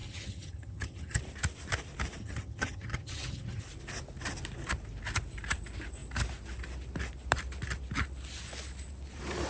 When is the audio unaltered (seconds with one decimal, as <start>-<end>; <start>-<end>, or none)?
1.2-2.2; 3.6-9.5